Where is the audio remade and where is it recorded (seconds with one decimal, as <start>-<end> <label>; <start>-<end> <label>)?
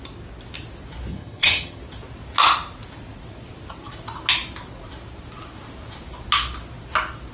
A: 0.0-1.1 recorded; 1.1-1.8 remade; 1.8-7.3 recorded